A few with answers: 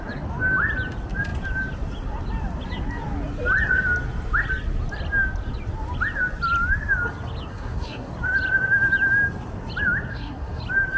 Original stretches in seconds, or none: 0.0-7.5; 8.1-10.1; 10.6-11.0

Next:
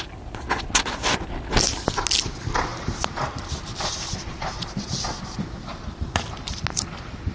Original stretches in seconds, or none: 0.0-2.7; 4.9-5.7; 6.6-7.3

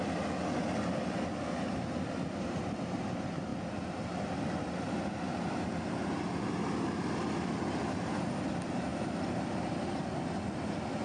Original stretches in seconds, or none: 0.0-11.0

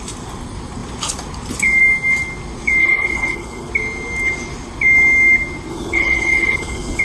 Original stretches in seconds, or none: 0.0-2.8; 3.7-5.7

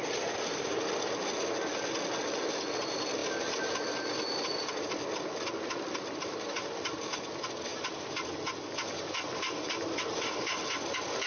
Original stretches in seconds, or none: 0.0-11.3

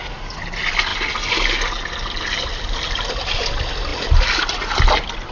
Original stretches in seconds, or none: 0.0-5.3